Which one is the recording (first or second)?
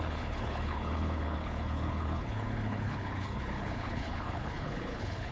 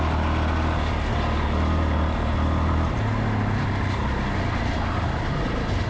second